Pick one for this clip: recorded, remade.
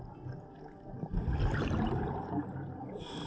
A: remade